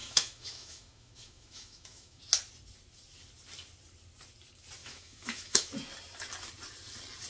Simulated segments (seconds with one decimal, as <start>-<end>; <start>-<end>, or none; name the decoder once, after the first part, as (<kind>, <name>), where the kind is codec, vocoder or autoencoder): 0.0-2.2 (autoencoder, DAC-VAE); 4.8-5.7